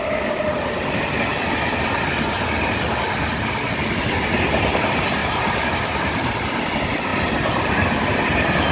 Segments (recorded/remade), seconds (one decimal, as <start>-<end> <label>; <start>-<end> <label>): 0.0-5.2 recorded; 5.2-6.0 remade; 6.0-8.7 recorded